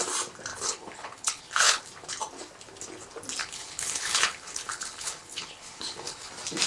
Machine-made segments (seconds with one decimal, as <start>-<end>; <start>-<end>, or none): 0.5-1.8; 3.4-6.3